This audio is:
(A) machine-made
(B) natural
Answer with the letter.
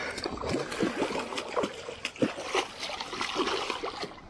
B